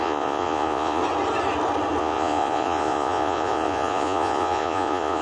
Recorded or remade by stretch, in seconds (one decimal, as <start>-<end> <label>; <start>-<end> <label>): 0.0-1.0 remade; 1.0-2.0 recorded; 2.0-5.2 remade